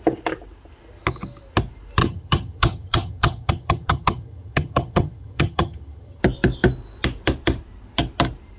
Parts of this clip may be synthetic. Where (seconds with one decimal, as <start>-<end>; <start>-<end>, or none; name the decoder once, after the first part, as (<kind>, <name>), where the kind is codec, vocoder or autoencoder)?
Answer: 2.0-6.2 (vocoder, HiFi-GAN)